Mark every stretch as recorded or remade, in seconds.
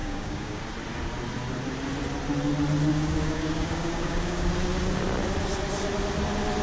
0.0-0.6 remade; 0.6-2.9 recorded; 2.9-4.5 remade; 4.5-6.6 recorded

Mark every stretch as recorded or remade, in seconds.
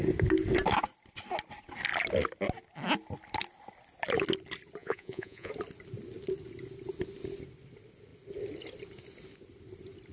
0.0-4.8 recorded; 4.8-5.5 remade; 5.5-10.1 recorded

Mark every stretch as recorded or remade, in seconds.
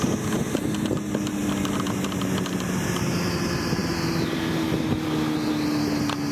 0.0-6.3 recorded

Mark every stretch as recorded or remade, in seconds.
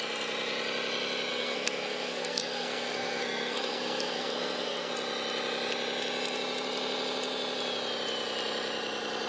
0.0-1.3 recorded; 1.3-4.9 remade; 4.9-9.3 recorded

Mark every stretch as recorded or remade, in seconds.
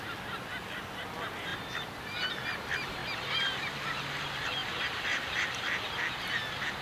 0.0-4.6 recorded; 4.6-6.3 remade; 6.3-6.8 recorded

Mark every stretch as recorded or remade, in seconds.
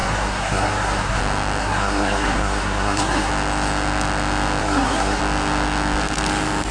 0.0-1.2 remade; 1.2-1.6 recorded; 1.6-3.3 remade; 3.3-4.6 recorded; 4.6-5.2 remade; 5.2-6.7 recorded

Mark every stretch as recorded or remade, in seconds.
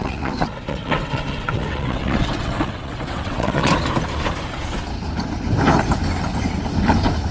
0.0-3.7 remade; 3.7-7.3 recorded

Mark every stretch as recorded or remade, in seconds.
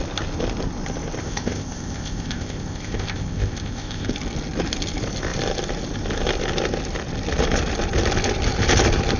0.0-1.2 recorded; 1.2-4.1 remade; 4.1-9.2 recorded